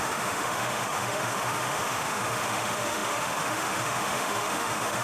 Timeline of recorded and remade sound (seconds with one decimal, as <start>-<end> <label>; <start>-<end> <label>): 0.0-5.0 remade